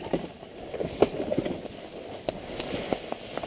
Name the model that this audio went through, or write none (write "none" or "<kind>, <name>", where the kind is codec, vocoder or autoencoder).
none